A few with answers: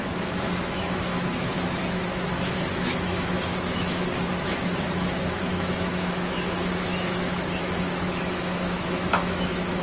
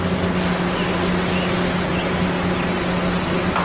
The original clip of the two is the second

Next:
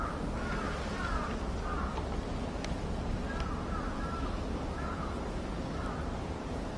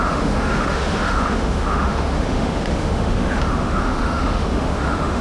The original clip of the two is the first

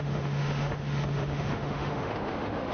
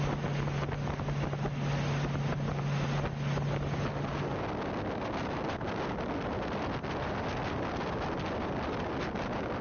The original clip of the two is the second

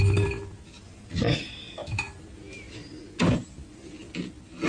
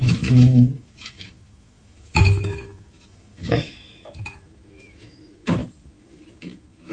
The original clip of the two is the first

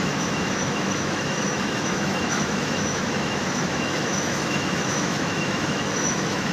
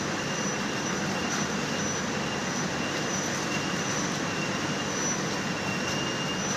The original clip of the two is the second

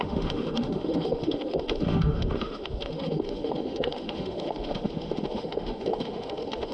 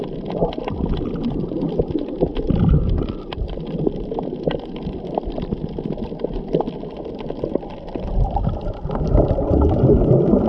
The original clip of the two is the second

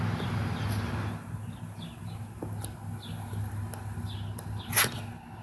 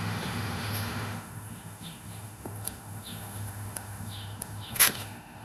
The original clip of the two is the first